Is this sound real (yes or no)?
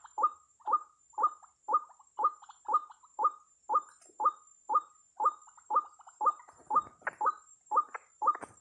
yes